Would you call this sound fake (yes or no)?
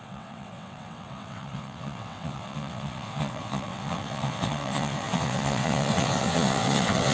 yes